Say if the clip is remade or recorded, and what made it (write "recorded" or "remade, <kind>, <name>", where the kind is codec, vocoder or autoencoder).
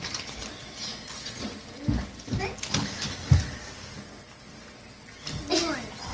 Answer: recorded